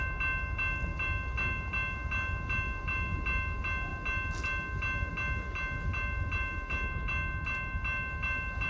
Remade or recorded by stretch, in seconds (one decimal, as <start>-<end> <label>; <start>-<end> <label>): 0.0-8.7 recorded